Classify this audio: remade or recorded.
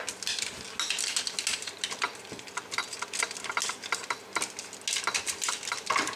recorded